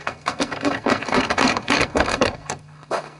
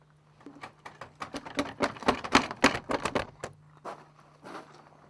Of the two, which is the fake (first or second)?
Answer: first